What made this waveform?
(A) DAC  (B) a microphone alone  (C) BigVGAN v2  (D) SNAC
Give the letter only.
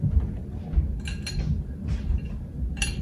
B